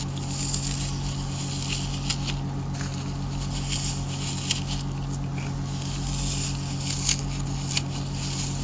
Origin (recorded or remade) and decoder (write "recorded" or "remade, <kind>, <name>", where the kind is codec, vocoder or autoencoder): recorded